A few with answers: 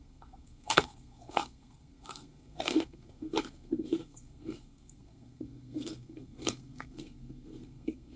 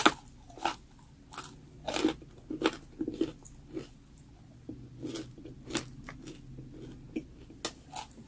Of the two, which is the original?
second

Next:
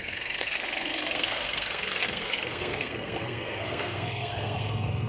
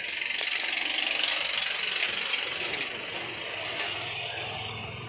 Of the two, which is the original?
second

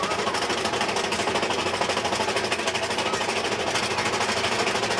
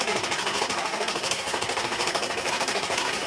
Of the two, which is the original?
first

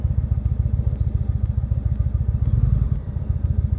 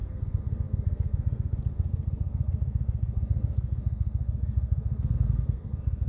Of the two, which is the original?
first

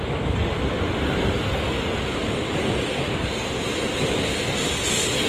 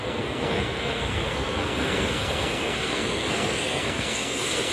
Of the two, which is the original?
first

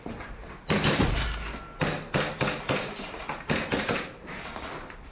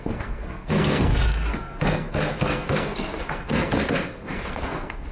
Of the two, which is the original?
first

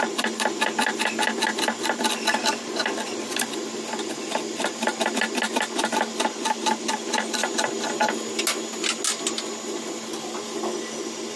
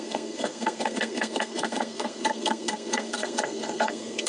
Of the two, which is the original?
first